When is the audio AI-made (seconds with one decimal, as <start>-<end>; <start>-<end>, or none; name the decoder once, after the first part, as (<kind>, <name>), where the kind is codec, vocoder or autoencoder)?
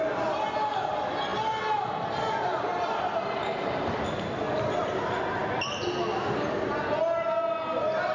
none